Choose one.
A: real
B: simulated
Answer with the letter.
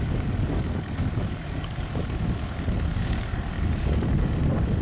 B